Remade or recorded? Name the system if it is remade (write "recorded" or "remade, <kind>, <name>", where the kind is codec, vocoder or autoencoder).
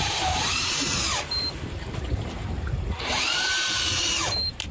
remade, vocoder, BigVGAN v2